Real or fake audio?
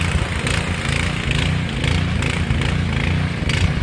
real